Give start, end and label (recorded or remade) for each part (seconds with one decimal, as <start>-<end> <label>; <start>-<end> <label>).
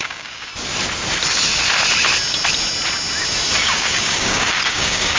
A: 0.0-0.5 remade; 0.5-3.6 recorded; 3.6-5.2 remade